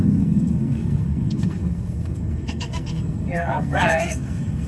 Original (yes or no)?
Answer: no